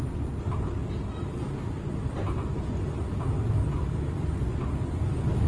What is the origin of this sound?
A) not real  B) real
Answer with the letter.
B